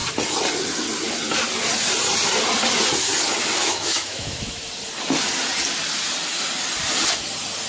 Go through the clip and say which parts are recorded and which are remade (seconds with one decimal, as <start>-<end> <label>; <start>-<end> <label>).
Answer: 0.0-3.6 recorded; 3.6-4.6 remade; 4.6-7.7 recorded